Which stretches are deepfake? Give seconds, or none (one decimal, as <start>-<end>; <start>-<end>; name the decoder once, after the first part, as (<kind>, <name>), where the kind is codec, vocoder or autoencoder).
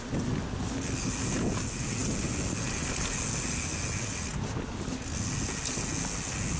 none